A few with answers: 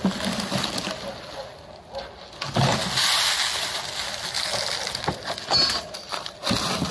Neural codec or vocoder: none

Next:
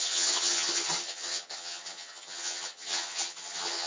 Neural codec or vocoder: vocoder, HiFi-GAN